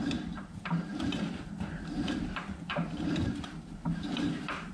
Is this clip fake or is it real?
fake